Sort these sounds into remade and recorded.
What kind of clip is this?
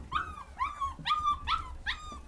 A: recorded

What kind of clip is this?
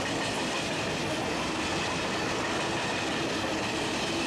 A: recorded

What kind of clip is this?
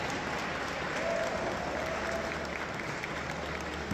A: recorded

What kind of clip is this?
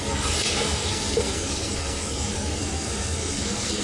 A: remade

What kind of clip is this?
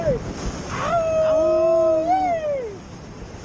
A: recorded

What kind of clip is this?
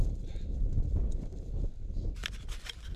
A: recorded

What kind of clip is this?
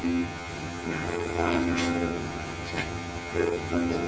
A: remade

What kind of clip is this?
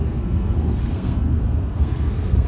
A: remade